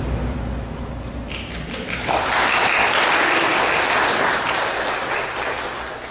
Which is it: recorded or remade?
recorded